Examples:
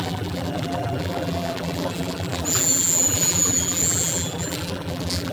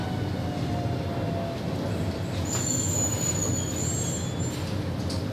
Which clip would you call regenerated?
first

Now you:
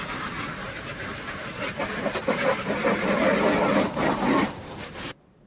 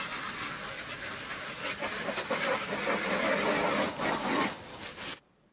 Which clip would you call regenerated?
first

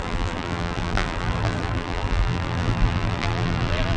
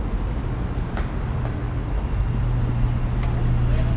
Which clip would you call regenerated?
first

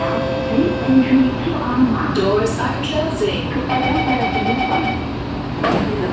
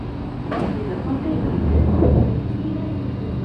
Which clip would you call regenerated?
first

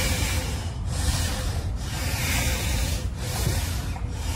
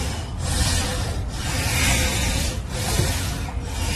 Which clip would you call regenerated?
first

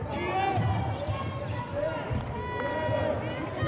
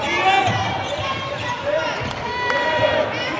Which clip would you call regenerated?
second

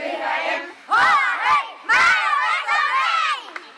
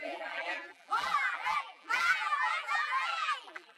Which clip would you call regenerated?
second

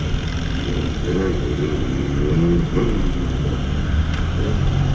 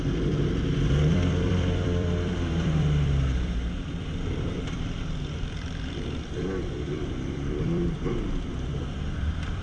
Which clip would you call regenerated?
second